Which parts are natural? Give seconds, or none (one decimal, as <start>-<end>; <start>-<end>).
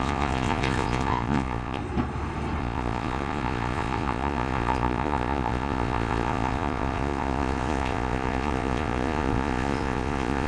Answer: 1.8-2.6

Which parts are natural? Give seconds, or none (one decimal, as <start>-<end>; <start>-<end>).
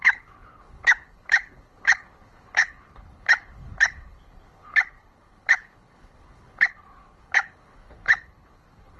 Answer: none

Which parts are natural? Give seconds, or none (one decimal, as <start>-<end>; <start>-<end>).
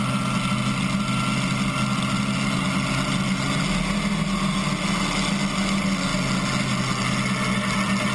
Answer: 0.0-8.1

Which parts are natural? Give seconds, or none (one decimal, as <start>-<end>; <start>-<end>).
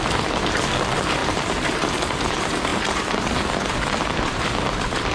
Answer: 0.0-1.2; 2.3-2.7; 4.4-5.1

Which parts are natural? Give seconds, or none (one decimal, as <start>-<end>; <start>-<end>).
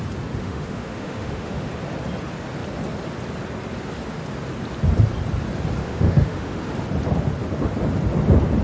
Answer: 0.0-0.4; 1.7-5.8; 6.6-8.6